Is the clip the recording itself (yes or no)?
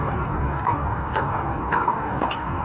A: no